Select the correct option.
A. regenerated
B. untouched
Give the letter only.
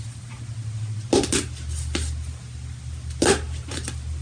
B